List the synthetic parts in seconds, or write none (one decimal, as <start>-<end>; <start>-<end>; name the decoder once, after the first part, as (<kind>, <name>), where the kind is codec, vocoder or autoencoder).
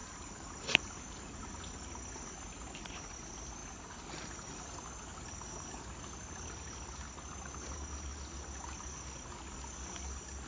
0.0-1.5 (vocoder, BigVGAN v2)